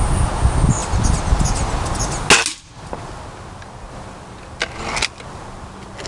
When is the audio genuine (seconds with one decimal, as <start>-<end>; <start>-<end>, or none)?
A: 0.0-6.1